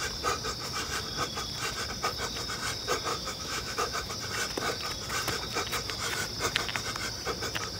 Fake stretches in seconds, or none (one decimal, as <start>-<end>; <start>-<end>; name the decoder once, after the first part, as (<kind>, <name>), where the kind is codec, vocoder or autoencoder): 3.1-4.1 (autoencoder, DAC-VAE)